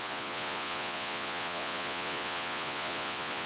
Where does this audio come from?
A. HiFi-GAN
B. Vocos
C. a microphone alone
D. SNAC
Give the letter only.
B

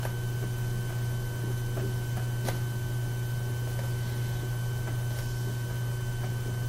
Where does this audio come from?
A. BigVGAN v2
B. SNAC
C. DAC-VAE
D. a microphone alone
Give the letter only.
D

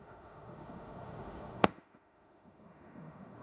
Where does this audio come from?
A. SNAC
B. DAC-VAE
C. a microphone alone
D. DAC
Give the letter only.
B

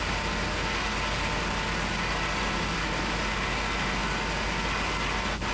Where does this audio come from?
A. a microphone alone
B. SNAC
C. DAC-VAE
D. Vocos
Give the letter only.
A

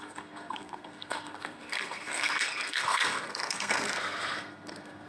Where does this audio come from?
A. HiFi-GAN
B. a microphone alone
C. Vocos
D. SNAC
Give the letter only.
D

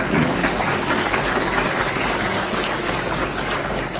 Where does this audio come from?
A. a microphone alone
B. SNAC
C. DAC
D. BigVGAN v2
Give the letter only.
C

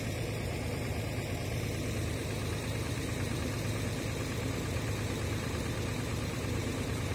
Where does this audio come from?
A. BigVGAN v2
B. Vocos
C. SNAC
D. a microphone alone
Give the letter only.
A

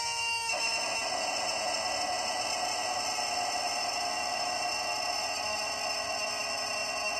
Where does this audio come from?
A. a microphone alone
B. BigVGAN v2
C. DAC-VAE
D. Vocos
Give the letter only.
A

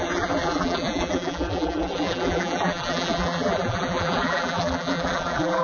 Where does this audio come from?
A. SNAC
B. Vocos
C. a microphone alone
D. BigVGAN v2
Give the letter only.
D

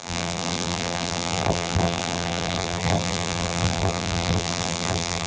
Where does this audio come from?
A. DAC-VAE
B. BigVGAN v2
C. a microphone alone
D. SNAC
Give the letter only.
B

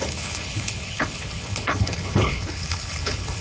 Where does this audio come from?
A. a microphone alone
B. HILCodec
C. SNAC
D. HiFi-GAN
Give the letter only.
B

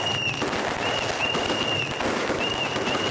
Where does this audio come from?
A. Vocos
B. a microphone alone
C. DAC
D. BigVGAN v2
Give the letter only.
B